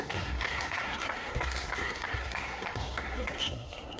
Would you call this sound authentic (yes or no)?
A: no